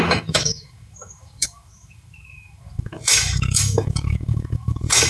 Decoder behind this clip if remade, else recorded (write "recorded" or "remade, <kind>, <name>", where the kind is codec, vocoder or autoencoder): remade, autoencoder, DAC-VAE